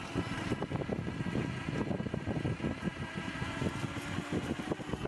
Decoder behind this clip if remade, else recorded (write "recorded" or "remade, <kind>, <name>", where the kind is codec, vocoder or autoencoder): recorded